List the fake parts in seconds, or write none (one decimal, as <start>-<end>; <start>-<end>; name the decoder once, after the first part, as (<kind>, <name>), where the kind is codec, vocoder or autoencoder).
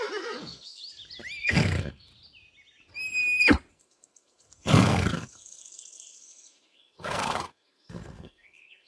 0.0-0.8 (codec, SNAC); 1.4-2.1; 3.7-8.9